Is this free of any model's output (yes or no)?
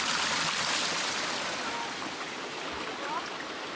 yes